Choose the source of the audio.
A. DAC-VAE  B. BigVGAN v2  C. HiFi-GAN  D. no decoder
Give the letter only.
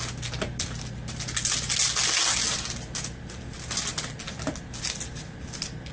D